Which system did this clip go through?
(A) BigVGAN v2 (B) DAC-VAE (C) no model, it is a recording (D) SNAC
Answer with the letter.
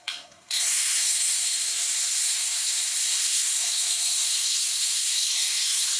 D